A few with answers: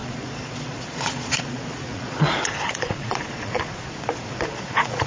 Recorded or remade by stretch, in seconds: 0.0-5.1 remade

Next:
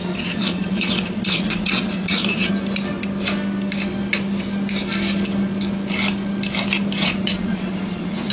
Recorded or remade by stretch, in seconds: 0.0-2.5 remade; 2.5-7.0 recorded; 7.0-8.3 remade

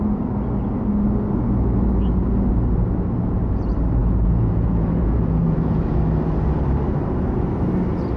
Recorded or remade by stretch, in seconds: 0.0-4.0 recorded; 4.0-5.8 remade; 5.8-8.2 recorded

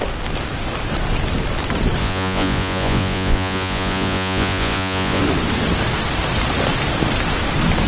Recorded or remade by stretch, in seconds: 0.0-2.0 recorded; 2.0-5.2 remade; 5.2-7.9 recorded

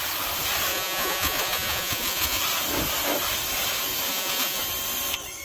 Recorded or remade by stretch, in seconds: 0.0-0.7 recorded; 0.7-2.4 remade; 2.4-4.1 recorded; 4.1-4.6 remade; 4.6-5.4 recorded

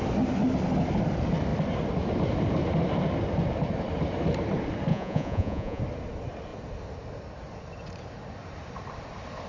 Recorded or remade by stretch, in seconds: 0.0-4.9 recorded; 4.9-5.8 remade; 5.8-9.5 recorded

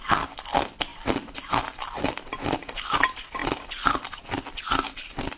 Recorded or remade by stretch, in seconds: 0.0-5.4 recorded

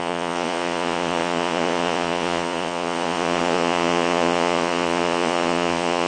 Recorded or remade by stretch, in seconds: 0.0-6.1 remade